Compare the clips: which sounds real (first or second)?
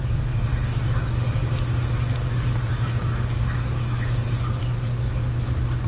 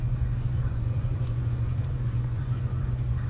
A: first